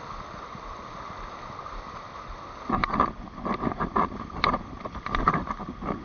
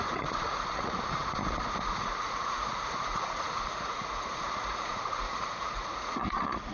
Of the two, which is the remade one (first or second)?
second